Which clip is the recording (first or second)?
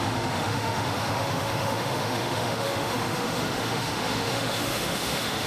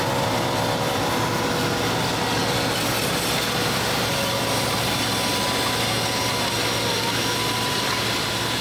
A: second